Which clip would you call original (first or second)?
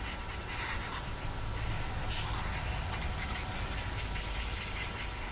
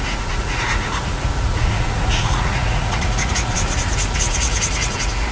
first